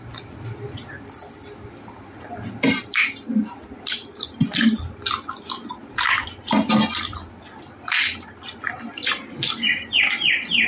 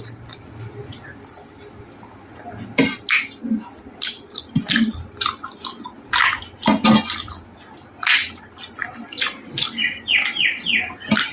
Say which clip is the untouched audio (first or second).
second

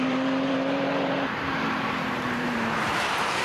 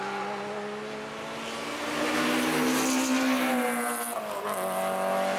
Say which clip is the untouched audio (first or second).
second